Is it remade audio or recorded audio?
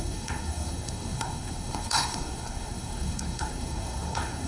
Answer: remade